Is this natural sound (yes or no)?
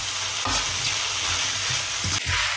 yes